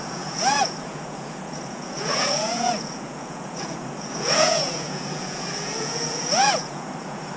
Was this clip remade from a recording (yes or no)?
yes